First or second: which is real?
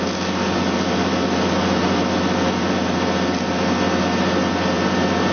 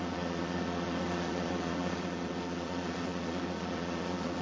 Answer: first